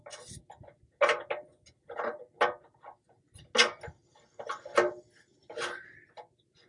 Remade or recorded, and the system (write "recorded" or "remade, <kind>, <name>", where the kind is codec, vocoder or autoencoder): recorded